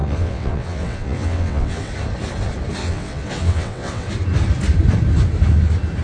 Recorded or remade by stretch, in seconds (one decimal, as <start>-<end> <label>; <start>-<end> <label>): 0.0-1.9 remade; 1.9-2.8 recorded; 2.8-4.1 remade; 4.1-6.0 recorded